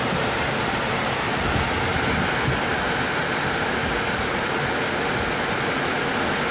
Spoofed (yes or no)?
no